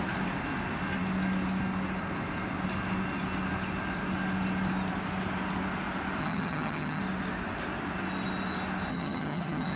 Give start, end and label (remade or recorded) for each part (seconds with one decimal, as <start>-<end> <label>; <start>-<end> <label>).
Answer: 0.0-6.2 recorded; 6.2-7.0 remade; 7.0-8.9 recorded; 8.9-9.8 remade